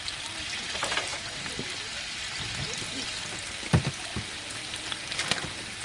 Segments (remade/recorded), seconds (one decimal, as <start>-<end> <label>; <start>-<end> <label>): 0.0-4.1 recorded; 4.1-4.7 remade; 4.7-5.8 recorded